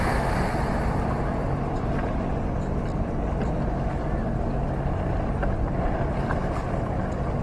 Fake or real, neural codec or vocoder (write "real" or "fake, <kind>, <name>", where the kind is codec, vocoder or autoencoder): real